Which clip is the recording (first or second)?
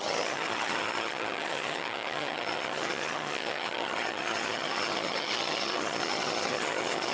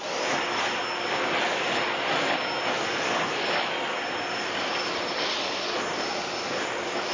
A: second